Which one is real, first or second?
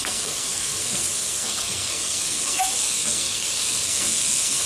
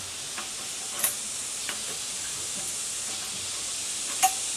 second